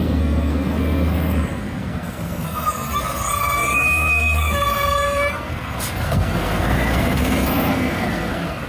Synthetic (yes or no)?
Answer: yes